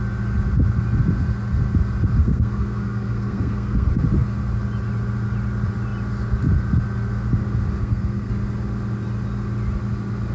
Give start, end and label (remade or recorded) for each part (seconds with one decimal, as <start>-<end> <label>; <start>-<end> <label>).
0.0-2.2 recorded; 2.2-3.9 remade; 3.9-7.8 recorded; 7.8-8.3 remade; 8.3-10.3 recorded